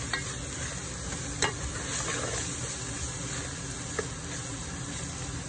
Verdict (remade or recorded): recorded